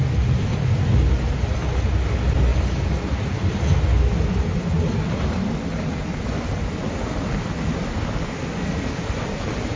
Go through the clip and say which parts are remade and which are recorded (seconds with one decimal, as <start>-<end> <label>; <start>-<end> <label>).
0.0-9.8 recorded